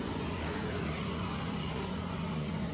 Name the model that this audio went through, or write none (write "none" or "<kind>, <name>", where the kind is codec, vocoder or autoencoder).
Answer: vocoder, Vocos